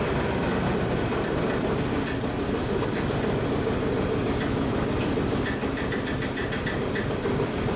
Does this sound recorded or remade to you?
recorded